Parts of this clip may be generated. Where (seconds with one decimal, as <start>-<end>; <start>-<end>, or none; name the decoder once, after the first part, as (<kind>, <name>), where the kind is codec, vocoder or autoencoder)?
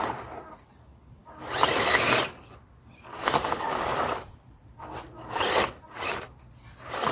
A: 1.2-2.7 (vocoder, BigVGAN v2); 3.1-6.4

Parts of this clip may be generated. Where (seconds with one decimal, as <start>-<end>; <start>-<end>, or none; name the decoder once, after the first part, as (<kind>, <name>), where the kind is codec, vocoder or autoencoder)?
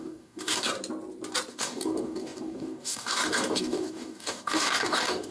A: 0.0-0.7 (codec, DAC); 1.5-5.3